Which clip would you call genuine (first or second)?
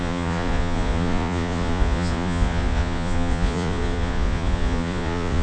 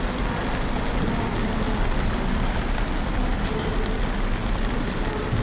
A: second